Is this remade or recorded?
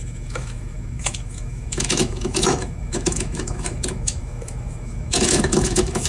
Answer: remade